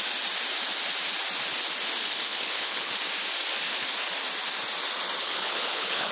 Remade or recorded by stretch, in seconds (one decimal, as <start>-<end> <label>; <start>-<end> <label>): 0.0-2.0 recorded; 2.0-2.9 remade; 2.9-5.2 recorded; 5.2-6.1 remade